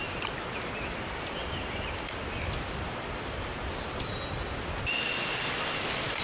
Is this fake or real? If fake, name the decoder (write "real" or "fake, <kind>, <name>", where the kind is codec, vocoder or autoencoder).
real